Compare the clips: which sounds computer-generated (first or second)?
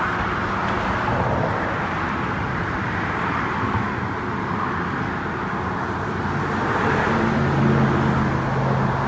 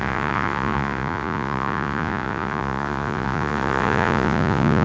second